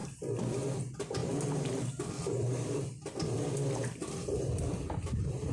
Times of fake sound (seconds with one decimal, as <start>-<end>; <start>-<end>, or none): 0.0-5.5